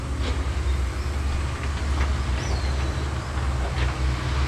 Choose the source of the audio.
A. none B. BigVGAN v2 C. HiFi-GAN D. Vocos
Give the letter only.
A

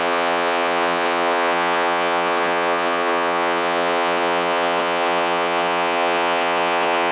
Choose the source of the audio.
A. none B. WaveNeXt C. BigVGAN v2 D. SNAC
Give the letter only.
B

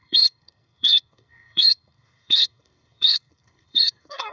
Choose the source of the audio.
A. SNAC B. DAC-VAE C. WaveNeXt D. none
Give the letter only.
A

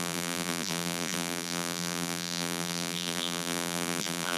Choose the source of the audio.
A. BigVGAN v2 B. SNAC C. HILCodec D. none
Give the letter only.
A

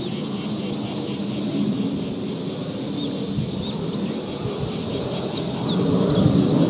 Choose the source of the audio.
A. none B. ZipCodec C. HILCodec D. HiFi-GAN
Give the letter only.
A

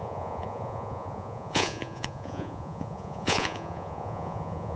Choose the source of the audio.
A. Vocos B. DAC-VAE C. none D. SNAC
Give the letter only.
A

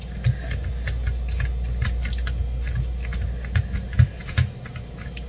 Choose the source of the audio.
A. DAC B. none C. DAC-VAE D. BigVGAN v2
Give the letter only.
B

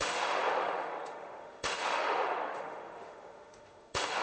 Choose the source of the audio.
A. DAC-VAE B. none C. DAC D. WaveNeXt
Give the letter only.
A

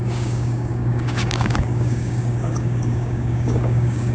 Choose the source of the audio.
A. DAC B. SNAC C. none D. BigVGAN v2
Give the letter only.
A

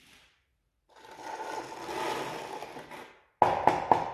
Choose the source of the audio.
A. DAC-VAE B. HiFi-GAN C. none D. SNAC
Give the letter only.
C